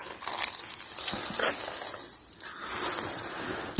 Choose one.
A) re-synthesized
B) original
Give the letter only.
B